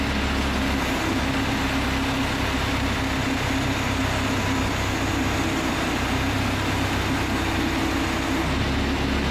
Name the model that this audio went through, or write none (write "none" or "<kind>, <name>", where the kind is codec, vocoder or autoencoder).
none